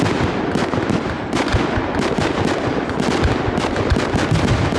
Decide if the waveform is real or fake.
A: real